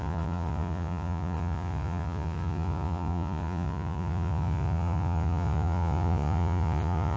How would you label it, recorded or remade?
remade